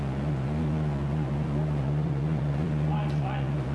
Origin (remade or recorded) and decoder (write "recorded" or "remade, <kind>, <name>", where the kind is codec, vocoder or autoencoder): remade, vocoder, Vocos